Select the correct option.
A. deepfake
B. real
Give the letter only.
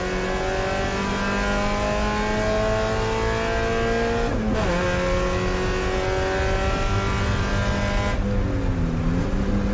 B